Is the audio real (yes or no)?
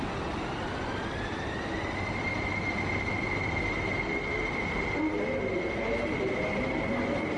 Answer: yes